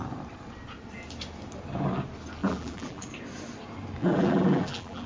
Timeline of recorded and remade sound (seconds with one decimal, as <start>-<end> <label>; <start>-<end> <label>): 0.0-2.4 recorded; 2.4-3.1 remade; 3.1-4.0 recorded; 4.0-5.1 remade